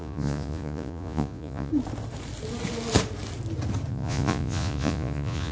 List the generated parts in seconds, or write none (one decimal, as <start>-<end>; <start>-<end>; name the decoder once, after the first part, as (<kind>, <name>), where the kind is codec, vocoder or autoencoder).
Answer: 0.0-1.7 (vocoder, Vocos); 3.9-5.5